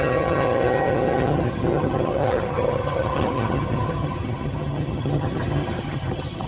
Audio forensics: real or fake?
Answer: fake